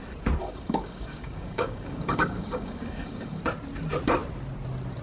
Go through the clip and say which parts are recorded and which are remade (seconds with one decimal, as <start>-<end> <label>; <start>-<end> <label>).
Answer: 0.0-0.4 recorded; 0.4-3.4 remade; 3.4-5.0 recorded